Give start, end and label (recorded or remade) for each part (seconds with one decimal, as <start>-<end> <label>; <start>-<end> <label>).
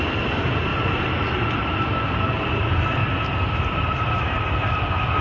0.0-5.2 recorded